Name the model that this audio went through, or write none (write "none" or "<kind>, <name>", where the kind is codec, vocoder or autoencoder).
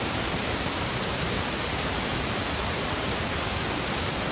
vocoder, BigVGAN v2